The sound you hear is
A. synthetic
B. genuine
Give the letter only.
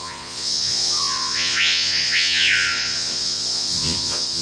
A